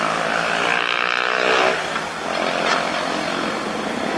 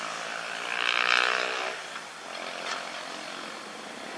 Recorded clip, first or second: first